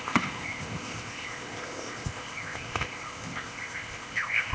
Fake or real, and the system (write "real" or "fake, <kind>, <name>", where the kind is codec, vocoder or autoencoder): fake, codec, ZipCodec